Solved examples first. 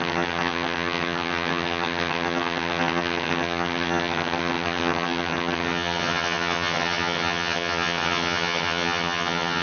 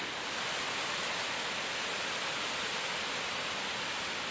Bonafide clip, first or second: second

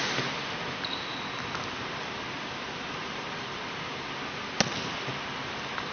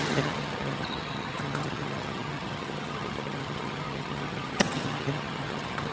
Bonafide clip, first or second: first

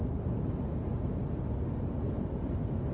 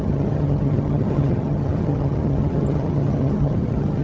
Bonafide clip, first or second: first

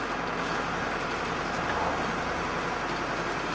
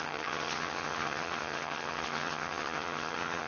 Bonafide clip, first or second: first